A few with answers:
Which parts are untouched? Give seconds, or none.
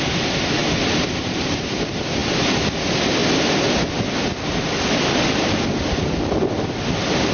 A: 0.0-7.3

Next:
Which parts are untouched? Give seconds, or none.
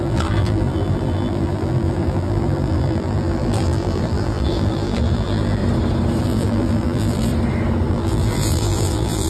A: 5.6-6.2; 7.3-7.9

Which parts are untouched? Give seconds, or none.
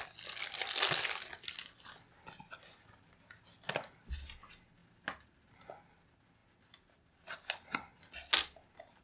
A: 0.0-9.0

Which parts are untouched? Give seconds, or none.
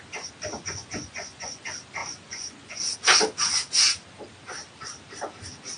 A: 0.0-0.6; 1.6-2.0; 2.8-5.8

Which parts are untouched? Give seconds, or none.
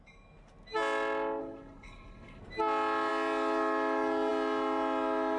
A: 0.0-1.4; 2.4-5.4